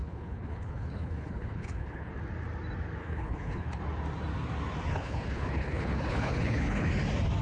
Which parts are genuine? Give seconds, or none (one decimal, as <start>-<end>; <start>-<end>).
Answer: 2.1-3.0; 3.8-4.9; 6.9-7.4